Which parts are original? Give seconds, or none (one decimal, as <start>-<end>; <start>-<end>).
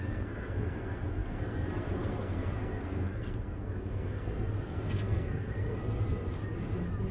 5.8-7.1